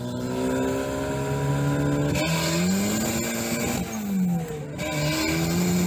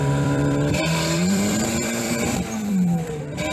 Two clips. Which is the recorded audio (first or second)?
first